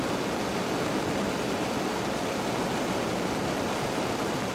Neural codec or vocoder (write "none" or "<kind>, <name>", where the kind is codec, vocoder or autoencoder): none